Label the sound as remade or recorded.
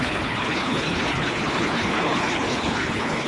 remade